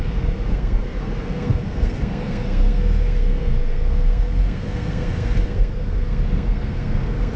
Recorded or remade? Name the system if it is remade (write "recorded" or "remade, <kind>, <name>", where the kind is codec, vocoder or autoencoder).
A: remade, codec, SNAC